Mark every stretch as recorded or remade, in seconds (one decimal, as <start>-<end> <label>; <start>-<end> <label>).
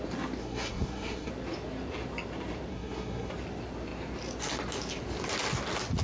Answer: 0.0-0.4 recorded; 0.4-1.3 remade; 1.3-2.7 recorded; 2.7-3.3 remade; 3.3-6.0 recorded